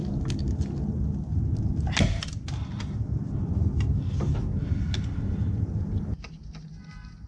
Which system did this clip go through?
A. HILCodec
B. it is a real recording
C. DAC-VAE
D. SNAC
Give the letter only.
B